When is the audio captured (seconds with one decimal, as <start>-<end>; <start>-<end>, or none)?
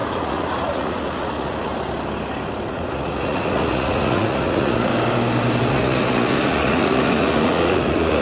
1.7-2.7; 4.9-5.7